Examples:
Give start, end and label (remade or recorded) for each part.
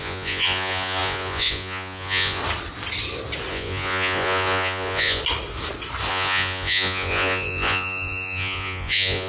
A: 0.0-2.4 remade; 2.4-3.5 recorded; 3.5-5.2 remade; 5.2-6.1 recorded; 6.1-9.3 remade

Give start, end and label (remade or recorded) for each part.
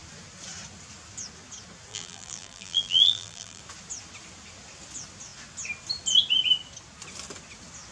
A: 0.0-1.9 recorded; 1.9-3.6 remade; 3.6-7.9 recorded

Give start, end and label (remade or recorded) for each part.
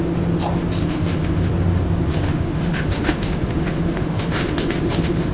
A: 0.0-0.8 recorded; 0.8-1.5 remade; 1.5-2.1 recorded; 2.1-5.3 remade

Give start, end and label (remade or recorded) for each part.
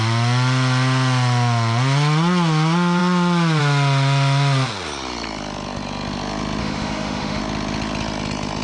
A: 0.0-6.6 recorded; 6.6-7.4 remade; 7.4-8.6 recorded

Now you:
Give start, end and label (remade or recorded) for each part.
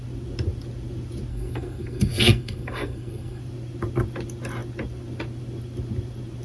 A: 0.0-1.3 recorded; 1.3-3.4 remade; 3.4-6.4 recorded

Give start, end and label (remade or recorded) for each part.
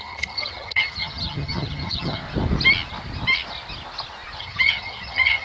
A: 0.0-2.2 remade; 2.2-4.4 recorded; 4.4-5.4 remade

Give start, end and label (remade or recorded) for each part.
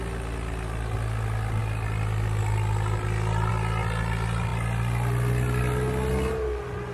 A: 0.0-6.9 recorded